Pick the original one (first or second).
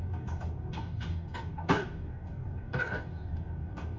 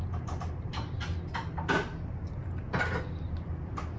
second